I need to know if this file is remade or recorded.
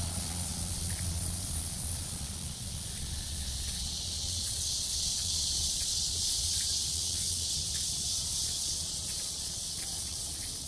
remade